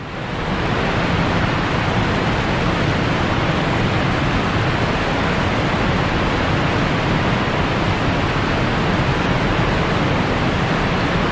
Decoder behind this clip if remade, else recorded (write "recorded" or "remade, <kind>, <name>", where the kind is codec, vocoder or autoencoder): recorded